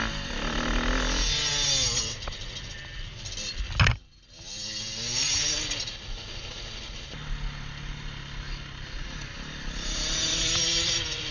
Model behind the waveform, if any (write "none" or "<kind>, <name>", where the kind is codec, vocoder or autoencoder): none